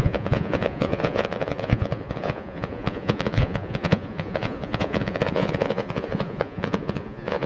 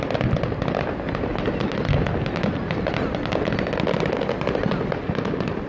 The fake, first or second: first